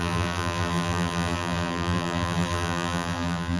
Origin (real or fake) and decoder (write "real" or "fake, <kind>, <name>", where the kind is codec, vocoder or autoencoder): fake, vocoder, BigVGAN v2